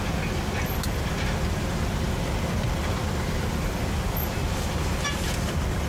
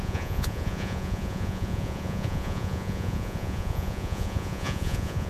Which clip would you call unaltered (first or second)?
first